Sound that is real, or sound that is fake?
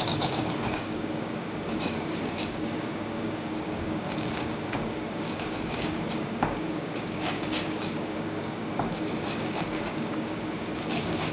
fake